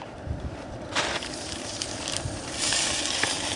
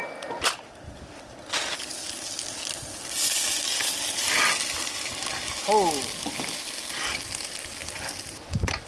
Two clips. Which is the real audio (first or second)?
second